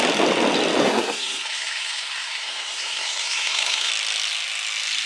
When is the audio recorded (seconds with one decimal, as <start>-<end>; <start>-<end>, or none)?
0.0-0.8; 3.9-5.1